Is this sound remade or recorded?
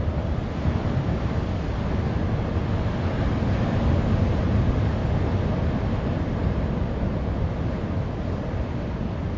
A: recorded